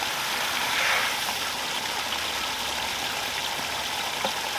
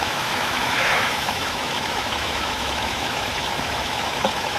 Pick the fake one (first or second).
second